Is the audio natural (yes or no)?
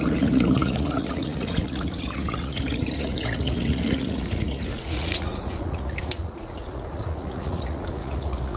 no